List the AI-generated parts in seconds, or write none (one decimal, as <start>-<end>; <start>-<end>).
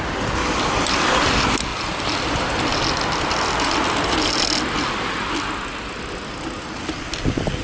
none